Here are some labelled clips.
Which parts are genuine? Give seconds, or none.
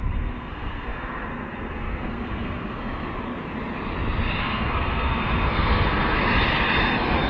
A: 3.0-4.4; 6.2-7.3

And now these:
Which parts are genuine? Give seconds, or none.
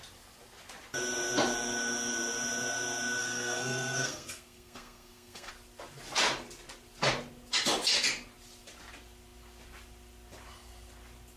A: 0.0-3.2; 5.5-11.4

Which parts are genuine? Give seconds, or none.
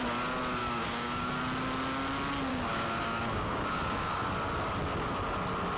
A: 0.0-0.6; 1.4-2.5; 4.3-5.8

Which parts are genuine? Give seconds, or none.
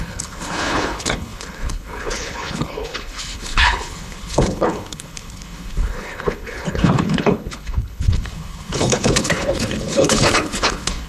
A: none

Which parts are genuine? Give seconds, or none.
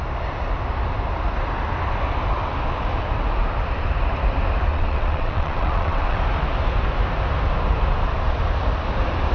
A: 0.0-4.7; 6.2-9.3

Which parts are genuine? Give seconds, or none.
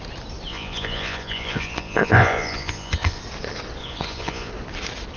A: 0.0-0.5; 3.2-3.8; 4.5-5.2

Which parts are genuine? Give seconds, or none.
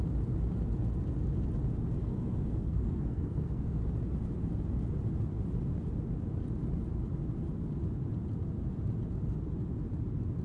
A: 0.0-2.0; 3.8-10.4